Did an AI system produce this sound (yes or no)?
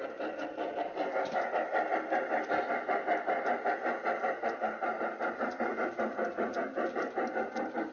no